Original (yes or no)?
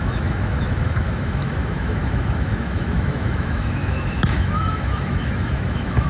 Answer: no